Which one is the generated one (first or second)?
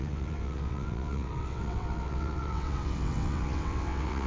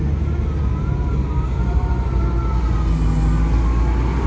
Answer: first